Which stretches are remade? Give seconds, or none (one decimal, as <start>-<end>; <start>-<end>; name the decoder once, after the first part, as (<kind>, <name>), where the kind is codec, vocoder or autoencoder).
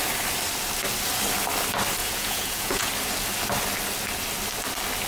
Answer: 2.0-2.9 (vocoder, Vocos)